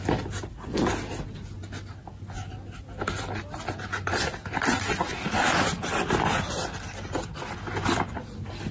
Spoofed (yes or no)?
no